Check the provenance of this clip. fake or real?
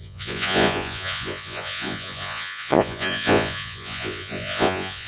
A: fake